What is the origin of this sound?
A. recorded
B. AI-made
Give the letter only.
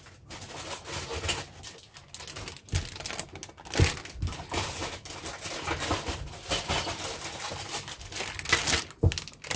A